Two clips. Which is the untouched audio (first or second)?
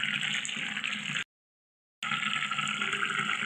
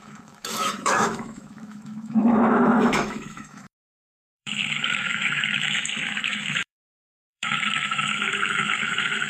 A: first